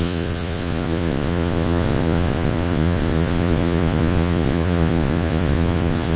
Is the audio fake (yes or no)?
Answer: yes